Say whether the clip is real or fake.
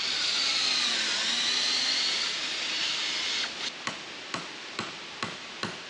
real